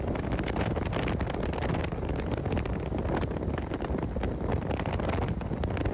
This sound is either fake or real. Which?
real